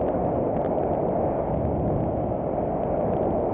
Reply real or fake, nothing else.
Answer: real